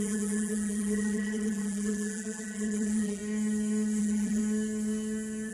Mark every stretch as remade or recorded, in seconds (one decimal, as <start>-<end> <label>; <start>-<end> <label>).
0.0-3.2 remade; 3.2-4.0 recorded; 4.0-4.4 remade; 4.4-5.5 recorded